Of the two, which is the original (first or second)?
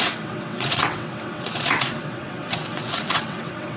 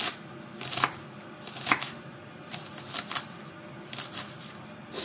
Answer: second